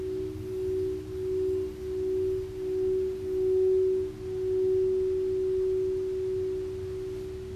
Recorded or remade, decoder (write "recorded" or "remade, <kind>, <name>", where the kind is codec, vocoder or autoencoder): recorded